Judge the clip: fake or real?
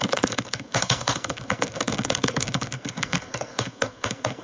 fake